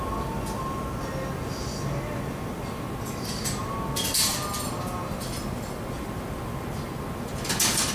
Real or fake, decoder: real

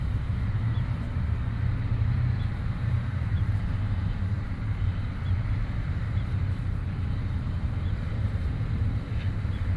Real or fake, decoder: fake, vocoder, BigVGAN v2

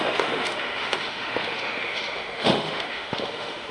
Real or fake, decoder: fake, autoencoder, DAC-VAE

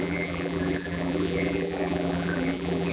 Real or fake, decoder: fake, vocoder, BigVGAN v2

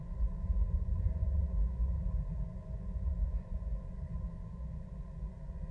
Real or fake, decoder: fake, vocoder, Vocos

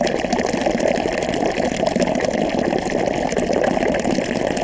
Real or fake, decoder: real